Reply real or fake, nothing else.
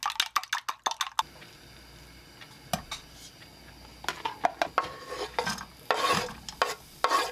real